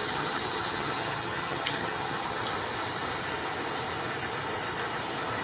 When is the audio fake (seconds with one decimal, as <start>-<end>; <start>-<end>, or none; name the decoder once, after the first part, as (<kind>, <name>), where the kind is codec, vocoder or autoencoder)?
0.0-2.4 (vocoder, HiFi-GAN)

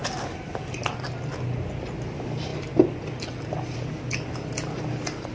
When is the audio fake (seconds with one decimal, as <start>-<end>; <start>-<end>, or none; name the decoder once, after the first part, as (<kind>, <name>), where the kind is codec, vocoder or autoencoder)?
none

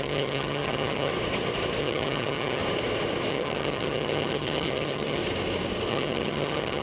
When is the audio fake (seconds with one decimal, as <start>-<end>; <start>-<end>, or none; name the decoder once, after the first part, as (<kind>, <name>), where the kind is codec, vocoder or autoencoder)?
0.0-1.1 (vocoder, HiFi-GAN); 1.8-2.6; 3.3-5.2; 5.9-6.8

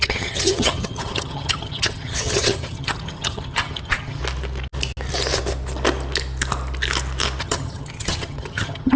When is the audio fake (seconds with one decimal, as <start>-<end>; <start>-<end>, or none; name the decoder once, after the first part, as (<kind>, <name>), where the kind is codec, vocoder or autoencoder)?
0.0-4.2 (vocoder, HiFi-GAN); 7.4-9.0